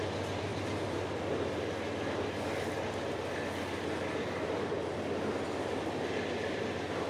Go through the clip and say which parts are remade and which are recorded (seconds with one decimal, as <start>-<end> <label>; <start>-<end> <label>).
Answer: 0.0-7.1 recorded